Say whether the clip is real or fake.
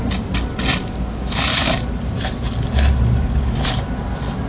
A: real